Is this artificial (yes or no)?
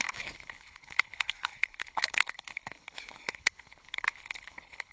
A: yes